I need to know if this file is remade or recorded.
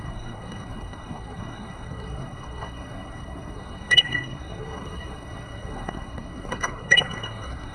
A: remade